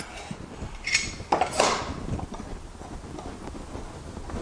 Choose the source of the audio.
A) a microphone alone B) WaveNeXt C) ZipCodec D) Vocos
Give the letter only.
A